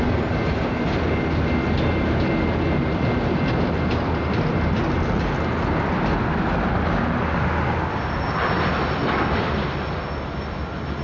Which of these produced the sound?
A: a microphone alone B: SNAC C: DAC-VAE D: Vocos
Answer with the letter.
A